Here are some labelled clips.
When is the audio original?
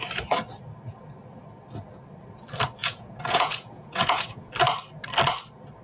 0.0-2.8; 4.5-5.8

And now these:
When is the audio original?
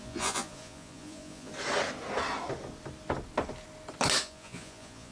1.5-4.2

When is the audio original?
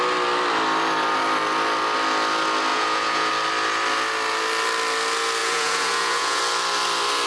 0.0-2.7; 3.3-5.4; 6.4-7.3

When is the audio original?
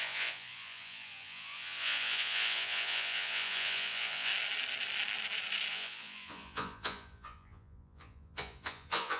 4.3-5.7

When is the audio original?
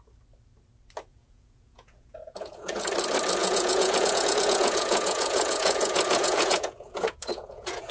0.0-1.1; 2.9-3.4